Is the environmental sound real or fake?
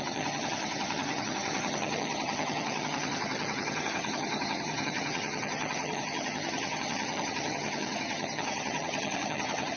fake